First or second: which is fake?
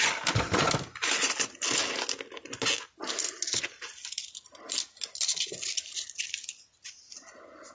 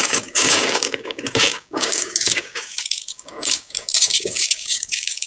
second